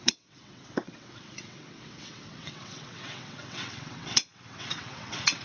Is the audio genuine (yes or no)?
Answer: no